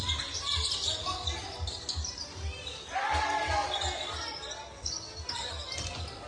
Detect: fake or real real